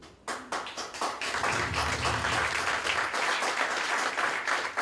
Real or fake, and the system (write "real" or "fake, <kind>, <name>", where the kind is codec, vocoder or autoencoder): real